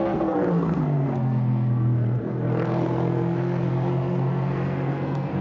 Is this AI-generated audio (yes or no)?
yes